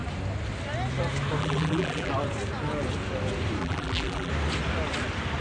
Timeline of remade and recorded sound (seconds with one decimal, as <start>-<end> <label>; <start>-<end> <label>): 0.0-1.4 recorded; 1.4-2.1 remade; 2.1-3.6 recorded; 3.6-4.3 remade; 4.3-5.4 recorded